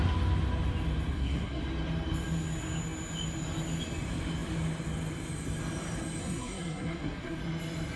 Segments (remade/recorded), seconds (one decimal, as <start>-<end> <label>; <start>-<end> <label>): 0.0-1.1 recorded; 1.1-1.6 remade; 1.6-6.2 recorded; 6.2-7.4 remade; 7.4-8.0 recorded